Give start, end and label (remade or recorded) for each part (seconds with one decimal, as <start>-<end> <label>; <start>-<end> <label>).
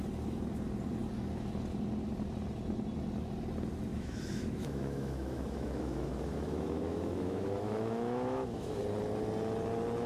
0.0-3.9 recorded; 3.9-8.8 remade; 8.8-10.1 recorded